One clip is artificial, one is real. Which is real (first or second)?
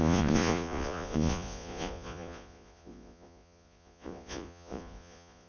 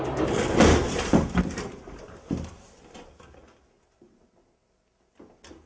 second